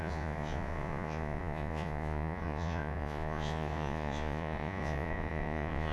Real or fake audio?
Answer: fake